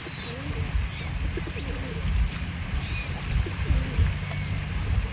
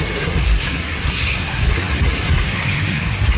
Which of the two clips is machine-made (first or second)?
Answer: second